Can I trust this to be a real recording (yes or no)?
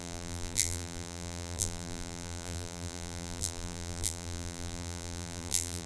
no